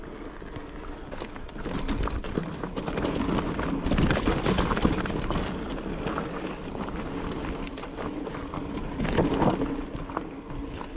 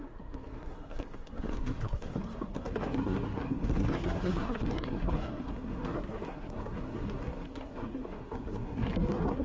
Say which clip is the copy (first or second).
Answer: second